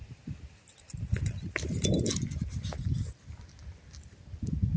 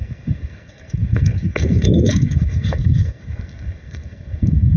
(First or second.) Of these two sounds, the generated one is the second